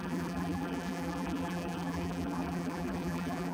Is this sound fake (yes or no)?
yes